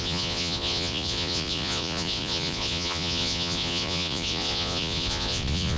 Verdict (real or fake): fake